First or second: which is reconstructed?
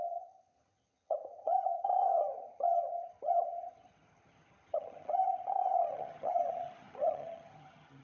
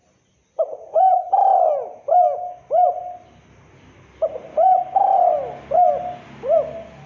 first